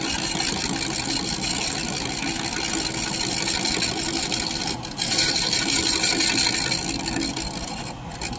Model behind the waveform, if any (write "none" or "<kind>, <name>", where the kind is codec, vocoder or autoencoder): none